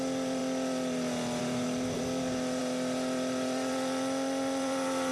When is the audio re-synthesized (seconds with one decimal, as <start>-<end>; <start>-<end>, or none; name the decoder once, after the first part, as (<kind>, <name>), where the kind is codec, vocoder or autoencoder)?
0.0-5.1 (vocoder, BigVGAN v2)